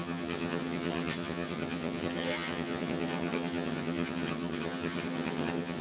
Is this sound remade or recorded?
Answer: remade